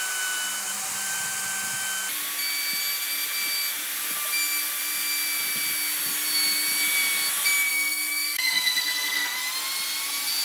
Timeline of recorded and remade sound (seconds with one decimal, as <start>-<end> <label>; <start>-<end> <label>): 0.0-7.7 recorded; 7.7-9.4 remade; 9.4-10.4 recorded